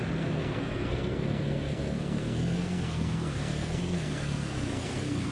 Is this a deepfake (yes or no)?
yes